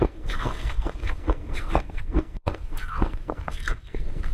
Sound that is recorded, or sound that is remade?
remade